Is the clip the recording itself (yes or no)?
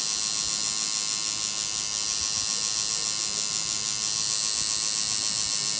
yes